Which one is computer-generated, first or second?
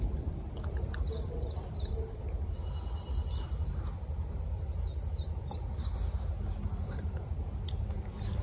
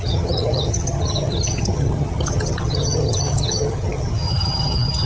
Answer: second